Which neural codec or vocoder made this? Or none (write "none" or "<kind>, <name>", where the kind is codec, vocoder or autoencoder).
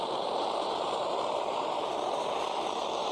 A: vocoder, BigVGAN v2